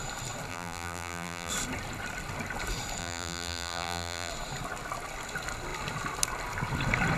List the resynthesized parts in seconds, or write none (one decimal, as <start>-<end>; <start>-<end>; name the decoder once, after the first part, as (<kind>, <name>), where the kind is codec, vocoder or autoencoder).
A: 0.5-1.5 (vocoder, BigVGAN v2); 3.0-4.3